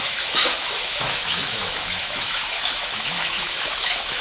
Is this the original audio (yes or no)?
no